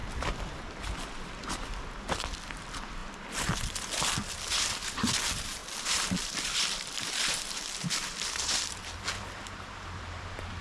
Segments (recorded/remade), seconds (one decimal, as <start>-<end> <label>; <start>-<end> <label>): 0.0-0.8 recorded; 0.8-10.6 remade